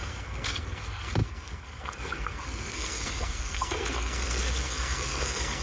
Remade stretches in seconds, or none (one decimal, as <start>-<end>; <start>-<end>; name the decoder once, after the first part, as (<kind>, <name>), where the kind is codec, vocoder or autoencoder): 0.0-5.6 (codec, SNAC)